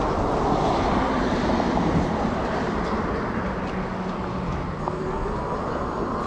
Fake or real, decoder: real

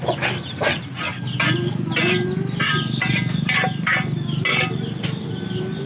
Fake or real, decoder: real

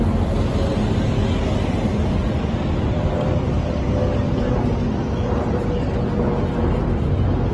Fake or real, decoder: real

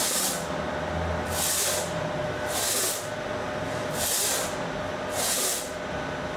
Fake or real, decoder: real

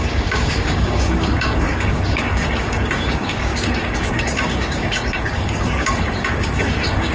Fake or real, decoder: fake, codec, DAC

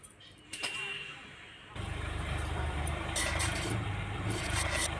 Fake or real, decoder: fake, vocoder, BigVGAN v2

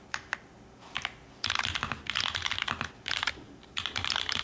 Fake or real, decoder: real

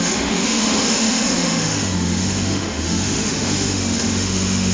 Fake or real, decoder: fake, autoencoder, DAC-VAE